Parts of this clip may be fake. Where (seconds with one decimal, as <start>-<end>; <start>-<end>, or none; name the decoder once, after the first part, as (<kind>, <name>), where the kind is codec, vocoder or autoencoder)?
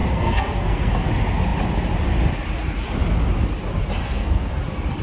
0.0-1.1 (codec, SNAC); 4.0-4.5